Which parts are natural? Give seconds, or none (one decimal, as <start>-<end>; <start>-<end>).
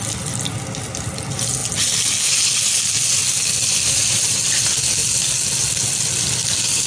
0.0-6.9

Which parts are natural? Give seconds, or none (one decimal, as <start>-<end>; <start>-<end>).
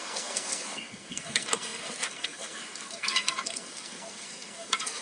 none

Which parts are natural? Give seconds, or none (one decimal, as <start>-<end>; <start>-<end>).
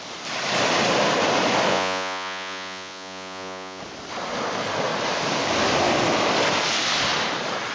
0.0-1.7; 3.8-7.7